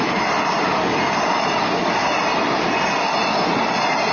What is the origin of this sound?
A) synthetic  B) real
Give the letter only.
B